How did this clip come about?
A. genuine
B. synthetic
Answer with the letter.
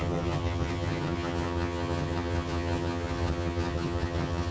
B